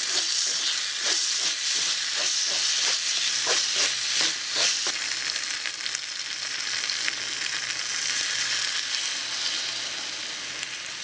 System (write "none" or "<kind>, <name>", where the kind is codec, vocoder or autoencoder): none